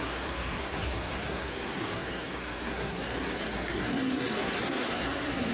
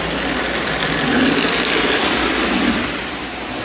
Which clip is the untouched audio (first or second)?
second